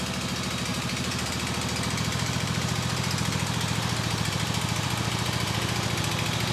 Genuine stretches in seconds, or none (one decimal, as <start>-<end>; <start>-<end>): 0.0-0.7; 1.3-2.1; 6.0-6.5